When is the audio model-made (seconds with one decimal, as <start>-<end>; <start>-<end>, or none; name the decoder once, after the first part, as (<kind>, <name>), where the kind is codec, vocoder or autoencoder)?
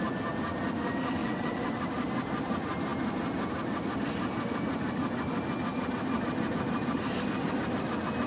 1.2-1.8 (vocoder, WaveNeXt)